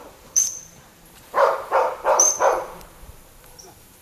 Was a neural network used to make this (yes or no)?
yes